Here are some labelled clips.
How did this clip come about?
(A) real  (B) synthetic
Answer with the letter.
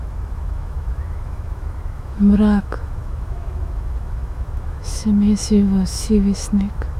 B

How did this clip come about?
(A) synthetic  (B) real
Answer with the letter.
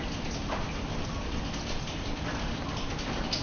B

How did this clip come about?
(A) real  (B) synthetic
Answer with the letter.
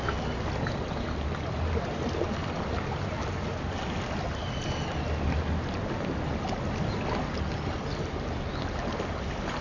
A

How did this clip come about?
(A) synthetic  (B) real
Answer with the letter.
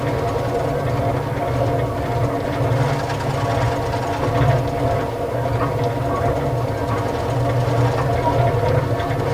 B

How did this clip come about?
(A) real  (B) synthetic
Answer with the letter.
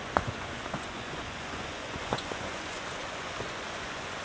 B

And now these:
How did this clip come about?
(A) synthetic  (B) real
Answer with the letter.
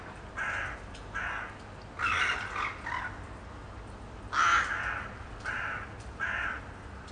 B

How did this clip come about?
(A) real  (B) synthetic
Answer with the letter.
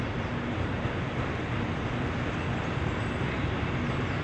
A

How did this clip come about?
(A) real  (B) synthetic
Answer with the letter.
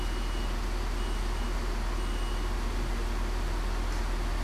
A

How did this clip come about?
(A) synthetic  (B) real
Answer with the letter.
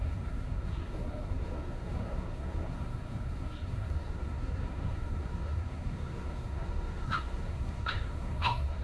A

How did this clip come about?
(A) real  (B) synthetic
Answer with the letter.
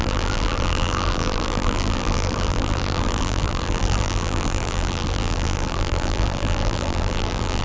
B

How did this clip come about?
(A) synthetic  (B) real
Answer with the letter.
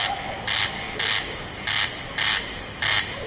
B